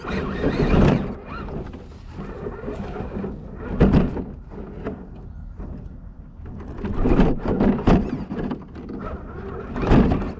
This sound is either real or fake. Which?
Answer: real